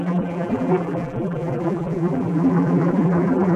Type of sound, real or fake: fake